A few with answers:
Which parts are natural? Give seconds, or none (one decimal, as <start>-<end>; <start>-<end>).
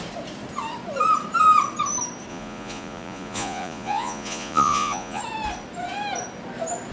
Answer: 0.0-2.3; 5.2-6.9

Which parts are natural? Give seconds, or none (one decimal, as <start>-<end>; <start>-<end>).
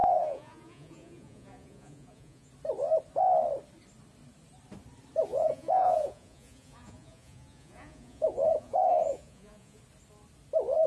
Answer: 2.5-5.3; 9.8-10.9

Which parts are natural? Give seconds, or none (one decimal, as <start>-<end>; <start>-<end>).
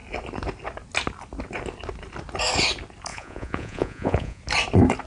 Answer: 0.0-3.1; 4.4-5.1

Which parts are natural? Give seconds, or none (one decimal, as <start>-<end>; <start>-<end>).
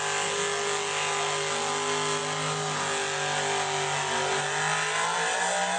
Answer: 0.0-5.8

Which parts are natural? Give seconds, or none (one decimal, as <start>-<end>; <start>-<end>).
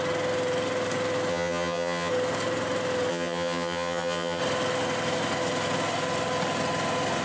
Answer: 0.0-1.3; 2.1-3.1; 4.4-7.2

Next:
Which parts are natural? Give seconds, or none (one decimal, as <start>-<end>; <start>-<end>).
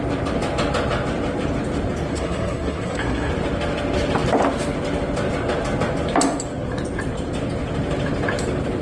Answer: 0.0-2.1; 3.3-8.8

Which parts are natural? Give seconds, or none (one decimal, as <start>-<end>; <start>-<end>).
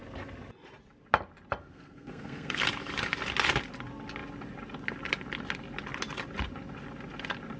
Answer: 0.0-1.6; 2.6-7.6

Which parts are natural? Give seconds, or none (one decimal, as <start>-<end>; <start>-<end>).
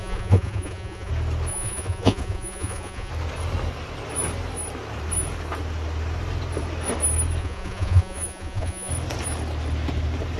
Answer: 1.1-1.5; 3.1-7.4; 8.9-10.4